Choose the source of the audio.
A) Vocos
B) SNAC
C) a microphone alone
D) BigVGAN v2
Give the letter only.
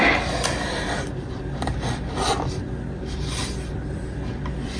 D